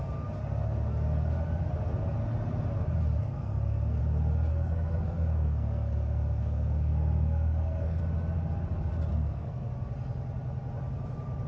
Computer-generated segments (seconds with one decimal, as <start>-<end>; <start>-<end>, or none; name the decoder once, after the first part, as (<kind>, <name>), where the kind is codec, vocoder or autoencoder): 3.2-4.0 (codec, SNAC); 4.5-8.0; 9.1-9.7